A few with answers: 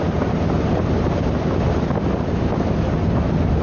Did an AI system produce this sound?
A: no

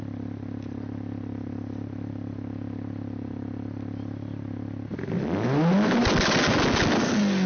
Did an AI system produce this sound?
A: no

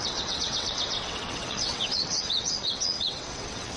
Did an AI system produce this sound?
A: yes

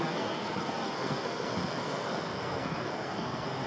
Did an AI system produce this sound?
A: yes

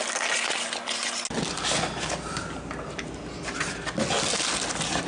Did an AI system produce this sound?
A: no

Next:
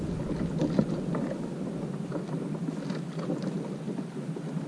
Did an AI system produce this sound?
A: no